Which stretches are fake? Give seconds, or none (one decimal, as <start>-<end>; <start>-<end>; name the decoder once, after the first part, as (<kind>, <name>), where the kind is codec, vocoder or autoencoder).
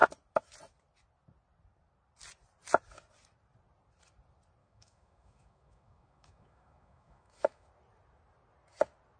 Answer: 4.6-7.7 (autoencoder, DAC-VAE)